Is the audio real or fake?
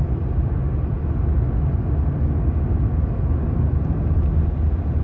real